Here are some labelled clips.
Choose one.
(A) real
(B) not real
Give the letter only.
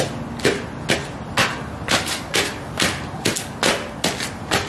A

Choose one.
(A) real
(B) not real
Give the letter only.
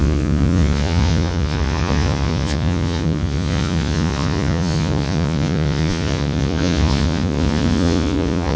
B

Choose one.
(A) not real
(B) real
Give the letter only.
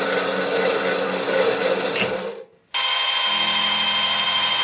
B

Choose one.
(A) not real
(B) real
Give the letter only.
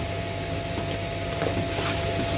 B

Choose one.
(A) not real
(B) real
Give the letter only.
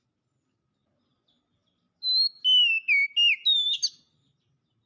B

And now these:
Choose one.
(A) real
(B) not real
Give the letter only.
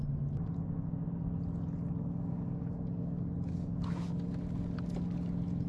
A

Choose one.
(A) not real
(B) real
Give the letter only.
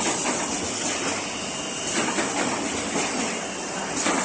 B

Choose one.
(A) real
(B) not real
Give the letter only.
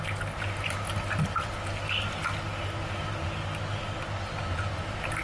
A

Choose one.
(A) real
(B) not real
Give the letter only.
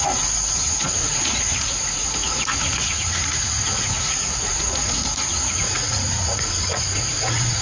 B